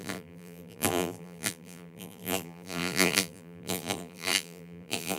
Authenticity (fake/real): fake